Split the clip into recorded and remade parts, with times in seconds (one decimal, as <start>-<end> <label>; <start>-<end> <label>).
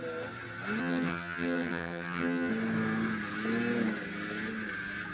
0.0-0.8 recorded; 0.8-2.5 remade; 2.5-5.1 recorded